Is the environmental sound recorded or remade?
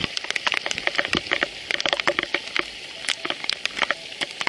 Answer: recorded